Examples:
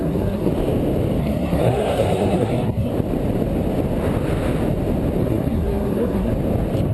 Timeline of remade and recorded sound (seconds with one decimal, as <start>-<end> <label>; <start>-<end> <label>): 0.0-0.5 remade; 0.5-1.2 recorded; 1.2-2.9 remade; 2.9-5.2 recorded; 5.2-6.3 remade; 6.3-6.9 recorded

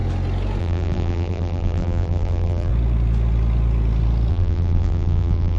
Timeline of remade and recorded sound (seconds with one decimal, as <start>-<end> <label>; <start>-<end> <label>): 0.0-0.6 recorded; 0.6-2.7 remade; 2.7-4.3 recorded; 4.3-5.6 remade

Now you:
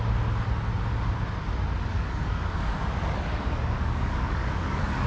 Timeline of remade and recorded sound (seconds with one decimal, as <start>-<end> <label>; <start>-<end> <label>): 0.0-1.9 recorded; 1.9-5.1 remade